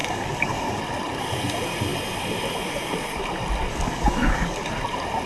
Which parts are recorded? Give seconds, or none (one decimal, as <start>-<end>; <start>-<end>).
0.8-3.7; 4.7-5.3